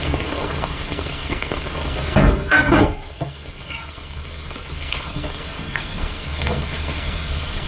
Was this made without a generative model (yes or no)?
no